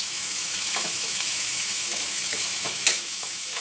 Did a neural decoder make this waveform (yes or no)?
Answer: yes